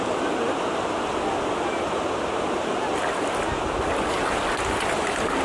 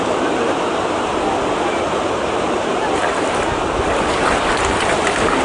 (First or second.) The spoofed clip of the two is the second